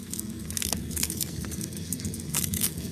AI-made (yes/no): yes